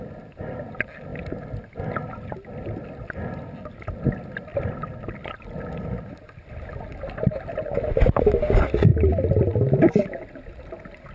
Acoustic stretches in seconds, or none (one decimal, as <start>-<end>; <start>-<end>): 0.0-11.1